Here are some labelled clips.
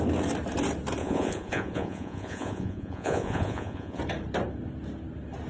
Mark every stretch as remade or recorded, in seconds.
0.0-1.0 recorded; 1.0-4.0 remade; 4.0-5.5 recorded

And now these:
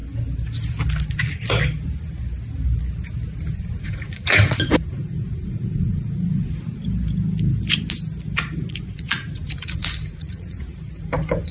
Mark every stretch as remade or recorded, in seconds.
0.0-3.8 recorded; 3.8-6.8 remade; 6.8-8.7 recorded; 8.7-11.5 remade

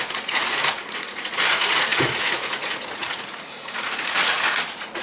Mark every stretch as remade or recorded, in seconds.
0.0-5.0 remade

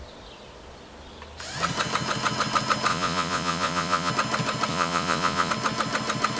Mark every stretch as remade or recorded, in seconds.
0.0-2.9 recorded; 2.9-4.1 remade; 4.1-4.7 recorded; 4.7-5.5 remade; 5.5-6.4 recorded

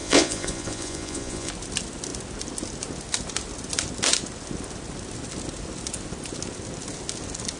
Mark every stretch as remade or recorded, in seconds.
0.0-1.5 remade; 1.5-7.6 recorded

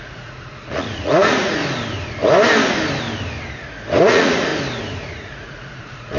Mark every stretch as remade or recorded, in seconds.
0.0-1.6 remade; 1.6-4.0 recorded; 4.0-4.5 remade; 4.5-5.0 recorded; 5.0-6.2 remade